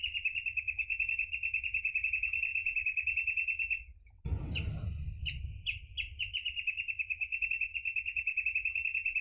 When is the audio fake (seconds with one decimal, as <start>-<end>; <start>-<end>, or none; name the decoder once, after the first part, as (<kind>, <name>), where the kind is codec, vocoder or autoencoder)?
none